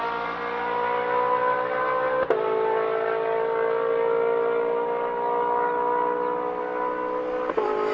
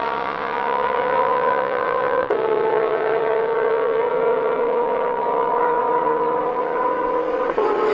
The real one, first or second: first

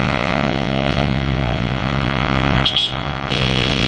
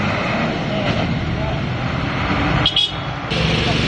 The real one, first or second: second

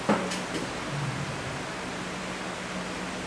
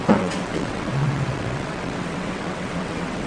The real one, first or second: first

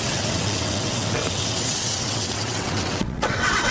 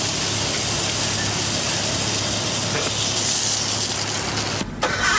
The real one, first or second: second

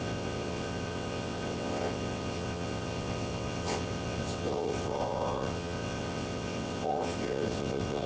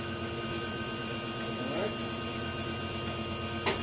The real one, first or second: second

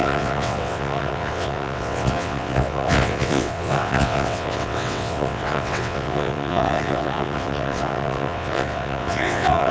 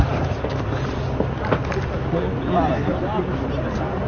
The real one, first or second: second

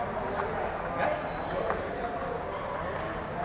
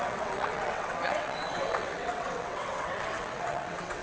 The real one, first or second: first